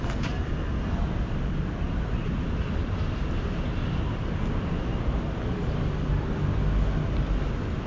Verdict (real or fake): real